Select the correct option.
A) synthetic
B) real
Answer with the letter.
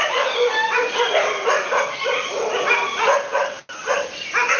B